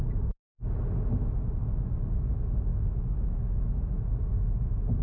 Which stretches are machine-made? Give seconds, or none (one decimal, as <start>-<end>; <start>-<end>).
2.7-3.7